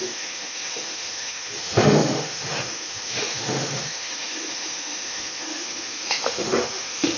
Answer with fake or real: fake